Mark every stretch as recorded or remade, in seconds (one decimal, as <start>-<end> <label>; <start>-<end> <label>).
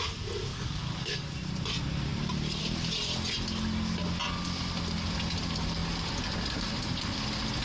0.0-0.5 recorded; 0.5-1.3 remade; 1.3-7.6 recorded